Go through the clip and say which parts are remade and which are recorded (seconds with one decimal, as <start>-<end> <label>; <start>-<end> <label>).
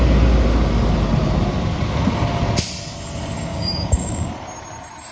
0.0-3.5 recorded; 3.5-4.3 remade; 4.3-5.1 recorded